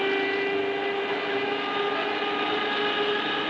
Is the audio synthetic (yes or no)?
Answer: no